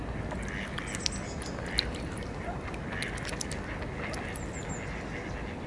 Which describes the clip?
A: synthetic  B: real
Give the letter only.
B